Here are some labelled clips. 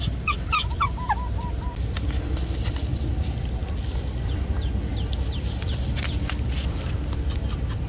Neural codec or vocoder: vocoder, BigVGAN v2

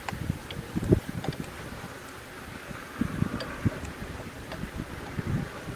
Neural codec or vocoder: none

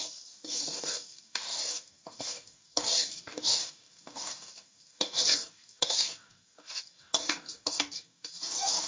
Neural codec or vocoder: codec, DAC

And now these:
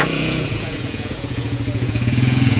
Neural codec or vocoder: vocoder, Vocos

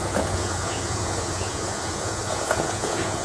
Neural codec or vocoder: vocoder, Vocos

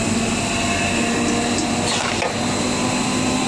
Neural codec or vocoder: none